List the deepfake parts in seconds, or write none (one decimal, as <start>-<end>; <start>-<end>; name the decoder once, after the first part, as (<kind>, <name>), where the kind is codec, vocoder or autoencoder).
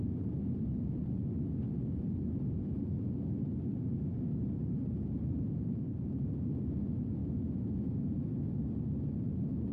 1.0-2.8 (vocoder, BigVGAN v2)